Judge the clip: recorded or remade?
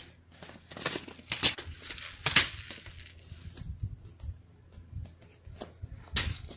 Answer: recorded